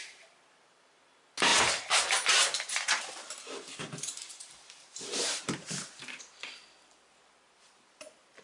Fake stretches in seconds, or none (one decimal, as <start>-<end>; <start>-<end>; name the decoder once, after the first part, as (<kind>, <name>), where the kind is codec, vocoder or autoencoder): 1.5-6.2 (vocoder, BigVGAN v2)